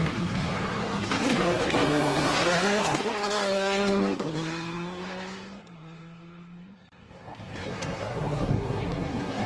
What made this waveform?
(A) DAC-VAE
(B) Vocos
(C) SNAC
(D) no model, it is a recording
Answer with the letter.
C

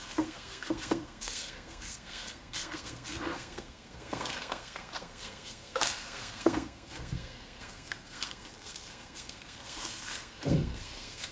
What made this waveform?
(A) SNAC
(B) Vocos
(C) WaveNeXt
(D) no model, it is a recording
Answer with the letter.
A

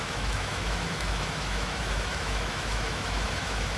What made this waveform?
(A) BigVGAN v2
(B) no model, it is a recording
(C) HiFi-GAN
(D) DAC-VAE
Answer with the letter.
D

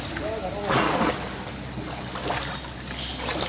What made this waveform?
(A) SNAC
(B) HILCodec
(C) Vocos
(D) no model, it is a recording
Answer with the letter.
D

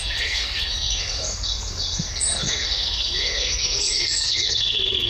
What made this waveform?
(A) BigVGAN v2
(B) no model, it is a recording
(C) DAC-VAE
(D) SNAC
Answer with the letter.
D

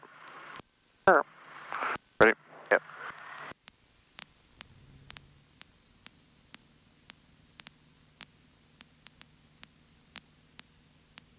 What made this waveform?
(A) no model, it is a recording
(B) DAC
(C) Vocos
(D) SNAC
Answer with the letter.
A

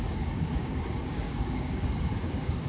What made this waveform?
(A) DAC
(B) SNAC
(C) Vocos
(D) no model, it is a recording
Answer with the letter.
A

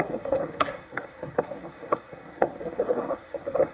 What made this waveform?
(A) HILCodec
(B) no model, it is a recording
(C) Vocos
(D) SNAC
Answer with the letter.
D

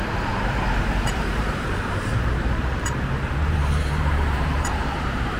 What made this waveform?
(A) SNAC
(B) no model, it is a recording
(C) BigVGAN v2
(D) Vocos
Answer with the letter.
C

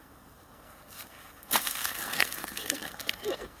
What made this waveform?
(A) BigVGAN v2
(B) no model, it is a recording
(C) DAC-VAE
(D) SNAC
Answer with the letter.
D